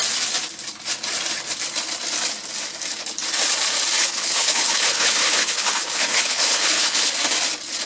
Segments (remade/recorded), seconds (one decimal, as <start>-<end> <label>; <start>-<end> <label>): 0.0-4.0 recorded; 4.0-7.1 remade; 7.1-7.9 recorded